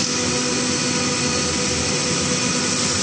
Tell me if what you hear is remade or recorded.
recorded